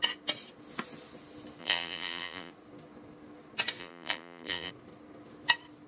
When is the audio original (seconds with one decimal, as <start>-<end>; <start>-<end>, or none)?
0.0-1.6; 2.5-3.8; 4.7-5.9